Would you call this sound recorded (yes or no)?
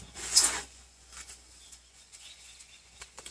no